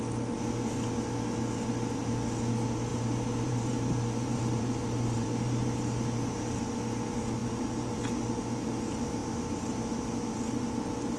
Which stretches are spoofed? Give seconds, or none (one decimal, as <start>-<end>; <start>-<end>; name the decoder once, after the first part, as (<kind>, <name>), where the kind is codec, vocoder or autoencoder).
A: 2.9-6.6 (vocoder, BigVGAN v2); 7.4-8.0